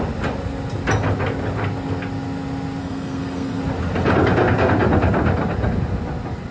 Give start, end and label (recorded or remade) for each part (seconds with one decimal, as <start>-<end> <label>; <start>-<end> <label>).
0.0-2.8 recorded; 2.8-3.6 remade; 3.6-6.5 recorded